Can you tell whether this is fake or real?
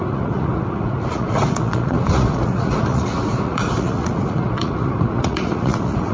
fake